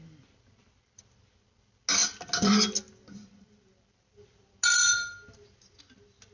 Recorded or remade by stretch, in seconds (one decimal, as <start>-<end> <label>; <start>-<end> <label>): 0.0-6.3 recorded